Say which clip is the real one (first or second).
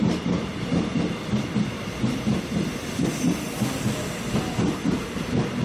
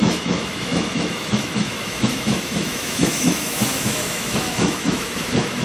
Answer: first